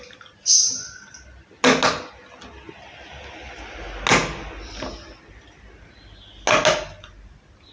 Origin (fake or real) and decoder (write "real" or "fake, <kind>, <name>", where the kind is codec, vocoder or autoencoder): real